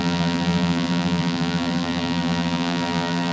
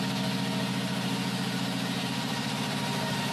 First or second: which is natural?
second